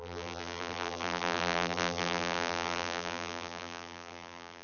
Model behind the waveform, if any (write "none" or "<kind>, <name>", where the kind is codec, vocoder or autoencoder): vocoder, BigVGAN v2